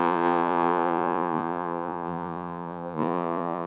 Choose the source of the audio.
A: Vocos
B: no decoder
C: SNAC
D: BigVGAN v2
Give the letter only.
A